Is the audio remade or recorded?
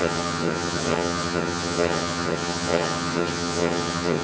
remade